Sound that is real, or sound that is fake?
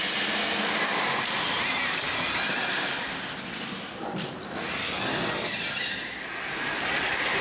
real